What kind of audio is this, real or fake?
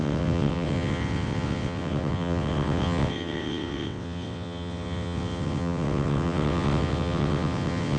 fake